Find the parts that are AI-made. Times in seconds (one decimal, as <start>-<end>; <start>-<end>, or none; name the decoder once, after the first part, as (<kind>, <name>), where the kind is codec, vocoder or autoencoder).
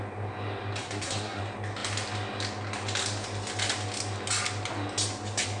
0.8-1.4 (codec, SNAC)